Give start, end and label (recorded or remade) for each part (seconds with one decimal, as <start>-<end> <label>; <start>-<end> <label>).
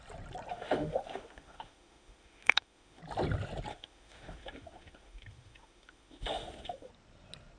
0.0-0.5 recorded; 0.5-3.0 remade; 3.0-3.7 recorded; 3.7-6.9 remade; 6.9-7.6 recorded